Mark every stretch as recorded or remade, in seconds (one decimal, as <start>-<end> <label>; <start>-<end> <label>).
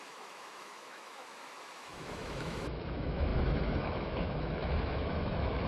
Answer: 0.0-5.7 remade